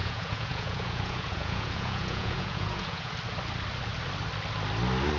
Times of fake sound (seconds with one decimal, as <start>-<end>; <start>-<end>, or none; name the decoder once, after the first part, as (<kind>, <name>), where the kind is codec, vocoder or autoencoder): 0.0-3.1 (vocoder, Vocos)